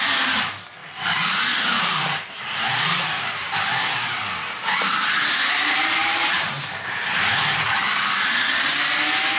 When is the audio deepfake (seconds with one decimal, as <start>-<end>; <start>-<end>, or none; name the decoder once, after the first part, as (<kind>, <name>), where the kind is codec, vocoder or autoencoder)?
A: 6.0-7.3 (vocoder, BigVGAN v2)